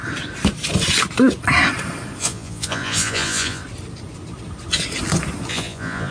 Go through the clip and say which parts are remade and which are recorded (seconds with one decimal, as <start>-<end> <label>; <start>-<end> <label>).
0.0-2.2 recorded; 2.2-3.6 remade; 3.6-5.5 recorded; 5.5-6.1 remade